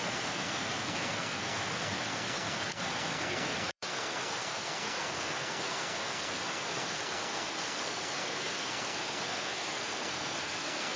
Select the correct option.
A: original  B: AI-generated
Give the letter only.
B